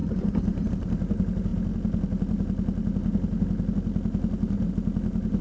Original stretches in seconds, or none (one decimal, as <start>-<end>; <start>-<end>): 0.7-5.4